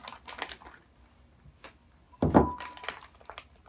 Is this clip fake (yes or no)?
no